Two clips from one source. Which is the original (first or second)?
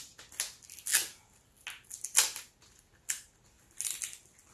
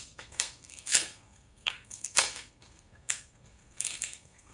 first